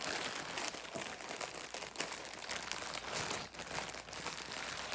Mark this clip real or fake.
real